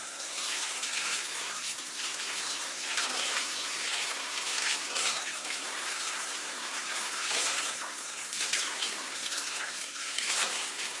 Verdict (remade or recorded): remade